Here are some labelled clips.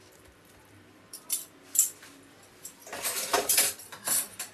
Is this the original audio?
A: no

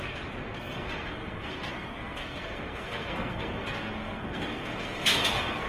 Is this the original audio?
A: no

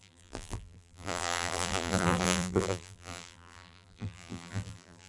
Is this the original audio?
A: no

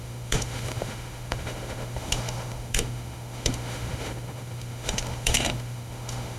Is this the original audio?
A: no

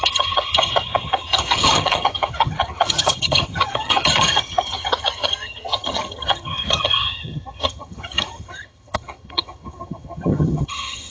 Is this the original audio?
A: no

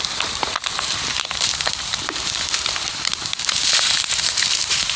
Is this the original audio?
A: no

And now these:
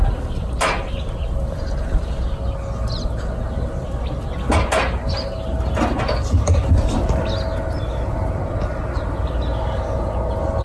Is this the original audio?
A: yes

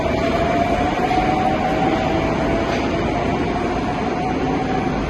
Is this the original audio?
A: yes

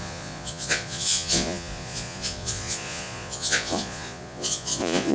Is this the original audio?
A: no